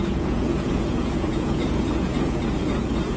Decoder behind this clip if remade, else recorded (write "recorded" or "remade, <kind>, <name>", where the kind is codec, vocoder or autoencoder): remade, vocoder, Vocos